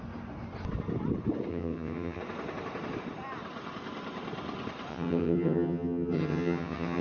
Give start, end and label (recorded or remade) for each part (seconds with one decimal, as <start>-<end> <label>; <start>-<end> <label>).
0.0-1.5 recorded; 1.5-2.2 remade; 2.2-4.9 recorded; 4.9-7.0 remade